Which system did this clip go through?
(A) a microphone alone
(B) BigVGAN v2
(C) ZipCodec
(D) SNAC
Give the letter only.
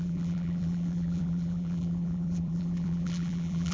B